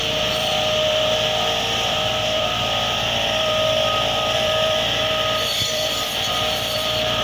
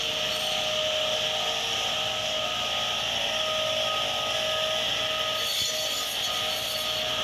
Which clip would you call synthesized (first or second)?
first